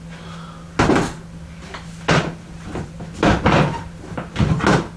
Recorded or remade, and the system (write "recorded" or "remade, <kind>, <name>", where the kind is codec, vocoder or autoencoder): recorded